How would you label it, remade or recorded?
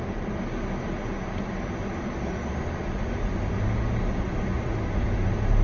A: recorded